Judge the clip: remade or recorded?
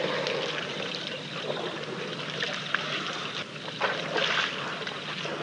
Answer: recorded